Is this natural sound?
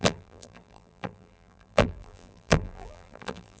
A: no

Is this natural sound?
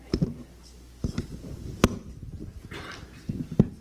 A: yes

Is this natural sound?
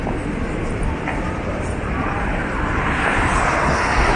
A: no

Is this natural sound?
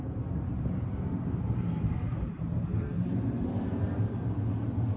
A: no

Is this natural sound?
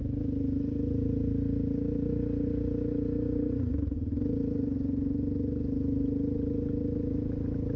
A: yes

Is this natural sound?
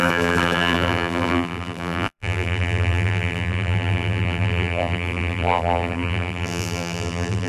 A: no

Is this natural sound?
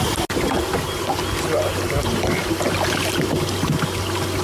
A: yes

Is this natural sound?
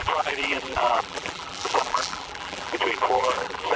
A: no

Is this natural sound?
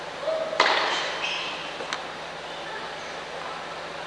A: yes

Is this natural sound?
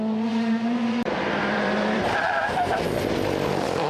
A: no